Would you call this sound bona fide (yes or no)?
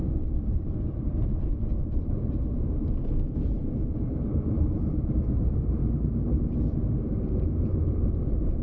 no